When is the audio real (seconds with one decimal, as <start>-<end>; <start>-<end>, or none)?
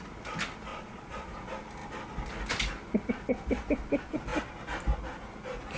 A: 0.0-0.7; 1.3-5.8